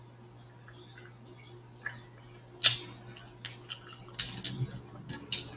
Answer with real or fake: real